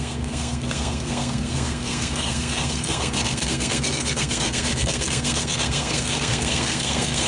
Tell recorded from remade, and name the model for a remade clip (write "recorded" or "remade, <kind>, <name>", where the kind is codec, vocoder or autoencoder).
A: remade, codec, SNAC